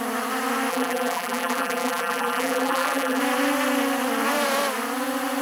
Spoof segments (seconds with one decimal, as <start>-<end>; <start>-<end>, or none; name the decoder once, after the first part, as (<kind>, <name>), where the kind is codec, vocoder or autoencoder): 0.7-3.2 (vocoder, BigVGAN v2)